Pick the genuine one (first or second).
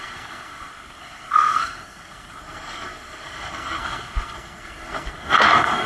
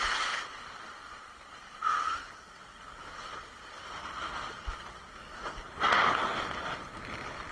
second